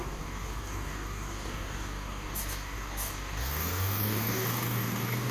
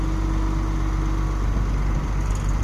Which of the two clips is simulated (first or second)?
first